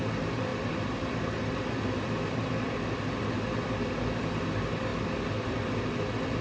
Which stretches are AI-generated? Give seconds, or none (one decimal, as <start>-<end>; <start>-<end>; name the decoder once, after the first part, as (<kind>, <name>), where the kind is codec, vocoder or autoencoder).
none